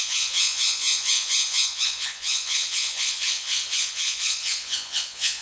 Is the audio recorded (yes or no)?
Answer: no